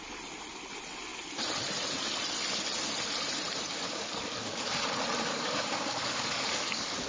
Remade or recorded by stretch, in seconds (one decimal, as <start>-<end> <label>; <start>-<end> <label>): 0.0-3.7 recorded; 3.7-4.7 remade; 4.7-5.3 recorded; 5.3-7.1 remade